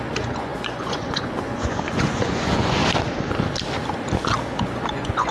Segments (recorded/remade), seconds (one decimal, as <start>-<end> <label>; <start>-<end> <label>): 0.0-2.8 remade; 2.8-4.6 recorded; 4.6-5.3 remade